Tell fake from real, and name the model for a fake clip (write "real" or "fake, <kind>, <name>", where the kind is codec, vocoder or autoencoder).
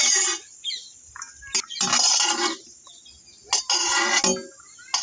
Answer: real